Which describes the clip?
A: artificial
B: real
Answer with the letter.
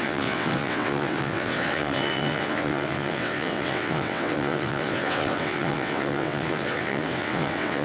A